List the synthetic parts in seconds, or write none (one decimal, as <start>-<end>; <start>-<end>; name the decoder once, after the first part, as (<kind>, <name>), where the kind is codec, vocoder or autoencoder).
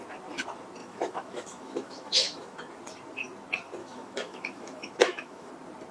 0.8-2.6 (autoencoder, DAC-VAE); 3.8-5.5